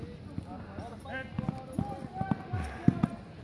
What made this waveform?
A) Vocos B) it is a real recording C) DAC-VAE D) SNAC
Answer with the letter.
B